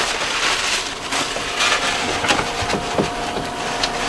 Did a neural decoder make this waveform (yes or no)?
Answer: no